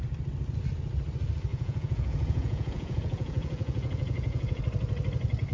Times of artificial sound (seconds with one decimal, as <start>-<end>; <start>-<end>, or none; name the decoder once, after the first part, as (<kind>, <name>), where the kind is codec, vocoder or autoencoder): 1.5-4.6 (vocoder, Vocos)